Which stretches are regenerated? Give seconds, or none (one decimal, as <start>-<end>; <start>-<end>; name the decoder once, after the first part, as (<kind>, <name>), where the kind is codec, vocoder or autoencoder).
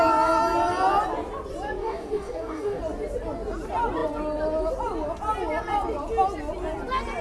1.8-2.8 (codec, DAC)